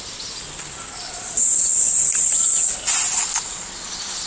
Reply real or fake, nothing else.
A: real